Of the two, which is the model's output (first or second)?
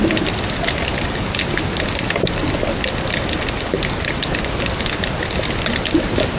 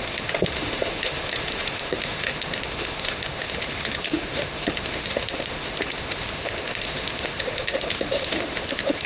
second